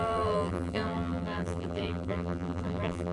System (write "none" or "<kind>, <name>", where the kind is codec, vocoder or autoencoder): vocoder, BigVGAN v2